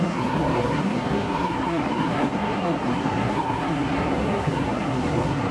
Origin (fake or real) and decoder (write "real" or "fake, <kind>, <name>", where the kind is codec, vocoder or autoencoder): fake, codec, SNAC